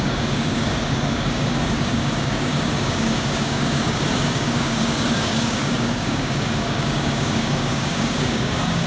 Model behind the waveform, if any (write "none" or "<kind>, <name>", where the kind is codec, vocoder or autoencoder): codec, DAC